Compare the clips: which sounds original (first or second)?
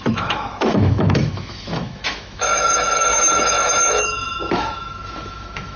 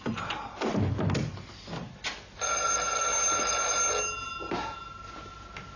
second